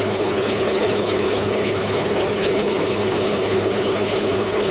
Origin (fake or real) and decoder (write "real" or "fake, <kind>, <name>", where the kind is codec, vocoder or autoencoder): fake, codec, HILCodec